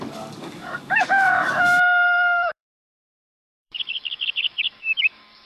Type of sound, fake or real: fake